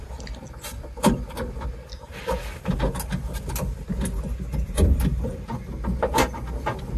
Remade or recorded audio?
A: recorded